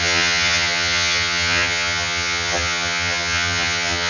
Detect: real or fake fake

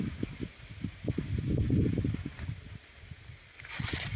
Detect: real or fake real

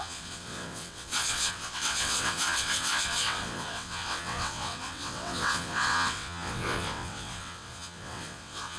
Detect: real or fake fake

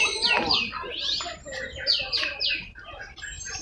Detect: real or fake real